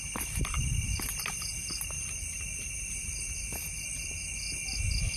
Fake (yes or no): no